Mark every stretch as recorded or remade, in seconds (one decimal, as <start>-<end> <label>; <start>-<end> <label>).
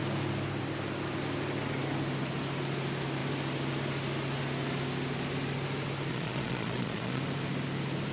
0.0-6.1 recorded; 6.1-7.2 remade; 7.2-8.1 recorded